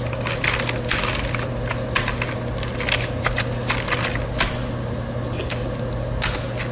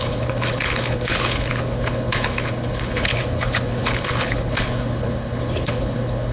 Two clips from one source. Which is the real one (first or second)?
first